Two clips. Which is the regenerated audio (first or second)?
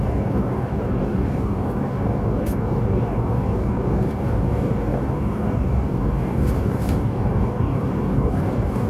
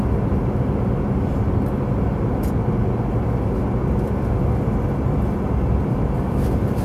first